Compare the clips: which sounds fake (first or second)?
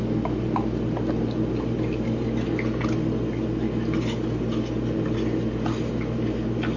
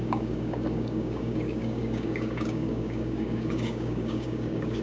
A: second